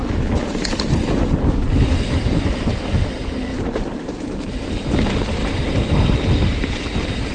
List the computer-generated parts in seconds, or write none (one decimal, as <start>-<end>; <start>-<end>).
3.5-4.6; 5.4-6.1

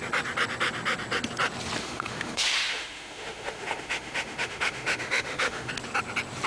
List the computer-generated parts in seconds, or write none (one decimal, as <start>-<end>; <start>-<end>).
1.8-5.7

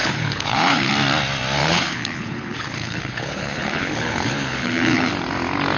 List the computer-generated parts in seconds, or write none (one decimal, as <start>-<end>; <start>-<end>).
0.0-0.9; 1.6-5.1

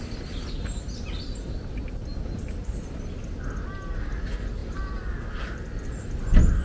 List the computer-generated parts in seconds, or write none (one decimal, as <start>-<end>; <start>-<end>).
none

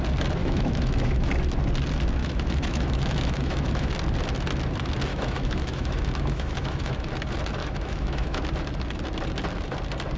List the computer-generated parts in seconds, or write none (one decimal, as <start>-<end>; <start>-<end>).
0.4-1.3; 2.2-3.9; 5.1-7.1; 7.6-8.4

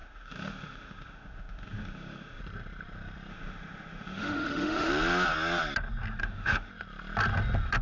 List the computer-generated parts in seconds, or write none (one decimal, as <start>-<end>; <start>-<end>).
0.0-2.4; 3.3-4.9; 6.2-6.7